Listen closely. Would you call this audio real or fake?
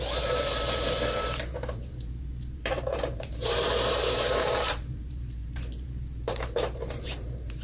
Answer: fake